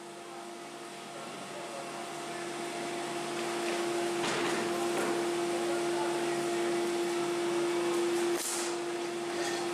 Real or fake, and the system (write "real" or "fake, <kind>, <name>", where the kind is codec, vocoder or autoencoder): real